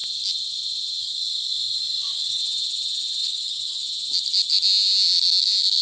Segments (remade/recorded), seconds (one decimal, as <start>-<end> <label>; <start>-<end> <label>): 0.0-1.0 recorded; 1.0-2.4 remade; 2.4-3.2 recorded; 3.2-3.8 remade; 3.8-5.8 recorded